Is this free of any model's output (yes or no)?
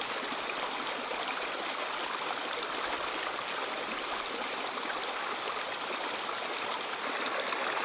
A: no